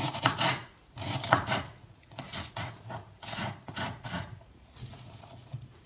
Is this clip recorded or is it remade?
remade